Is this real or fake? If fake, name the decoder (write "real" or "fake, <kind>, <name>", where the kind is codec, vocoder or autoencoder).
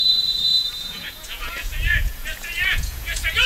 fake, vocoder, Vocos